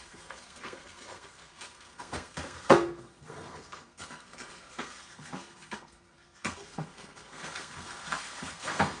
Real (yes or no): no